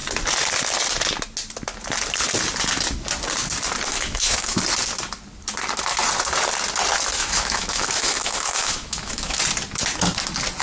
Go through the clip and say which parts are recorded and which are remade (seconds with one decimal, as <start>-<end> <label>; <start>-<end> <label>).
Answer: 0.0-3.9 recorded; 3.9-4.6 remade; 4.6-7.2 recorded; 7.2-9.4 remade; 9.4-10.6 recorded